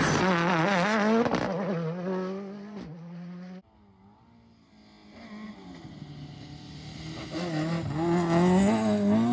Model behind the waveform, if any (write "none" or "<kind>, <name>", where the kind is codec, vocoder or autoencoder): none